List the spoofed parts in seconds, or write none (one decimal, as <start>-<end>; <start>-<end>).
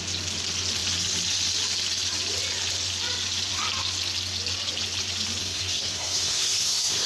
5.4-7.1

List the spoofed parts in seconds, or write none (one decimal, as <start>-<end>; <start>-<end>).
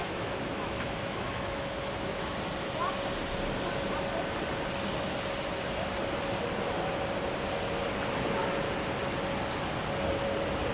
0.0-2.3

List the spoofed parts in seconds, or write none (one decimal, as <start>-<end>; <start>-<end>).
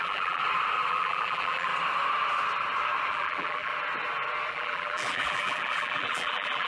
0.0-0.4; 0.9-1.7; 3.1-3.7; 4.5-6.7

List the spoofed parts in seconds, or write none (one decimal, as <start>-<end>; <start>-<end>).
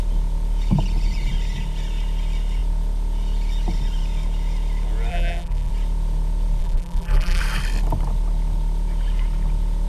5.1-5.7; 6.6-7.4